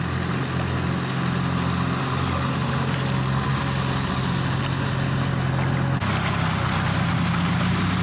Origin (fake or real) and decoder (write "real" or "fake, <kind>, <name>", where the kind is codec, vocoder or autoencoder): real